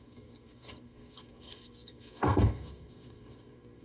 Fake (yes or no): yes